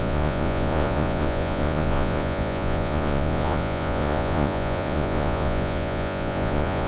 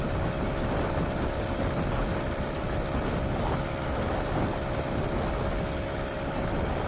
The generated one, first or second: first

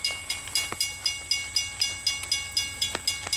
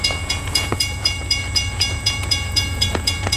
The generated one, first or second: second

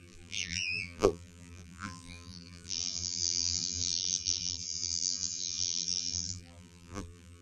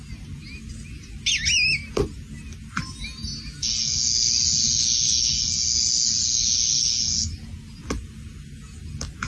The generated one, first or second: first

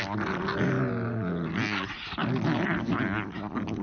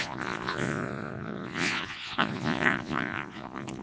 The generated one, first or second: second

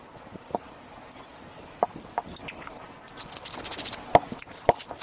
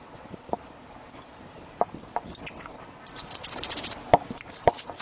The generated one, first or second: second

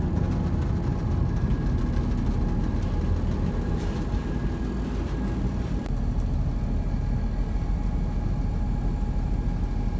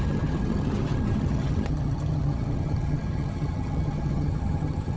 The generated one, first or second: second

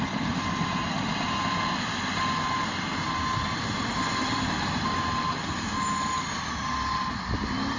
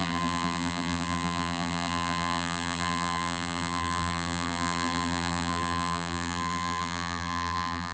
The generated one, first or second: second